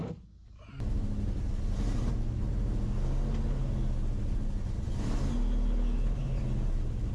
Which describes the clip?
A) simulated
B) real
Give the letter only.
B